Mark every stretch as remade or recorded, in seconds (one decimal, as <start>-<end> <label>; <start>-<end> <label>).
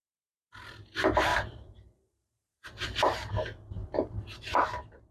0.0-1.3 recorded; 1.3-3.3 remade; 3.3-3.8 recorded; 3.8-4.6 remade; 4.6-5.1 recorded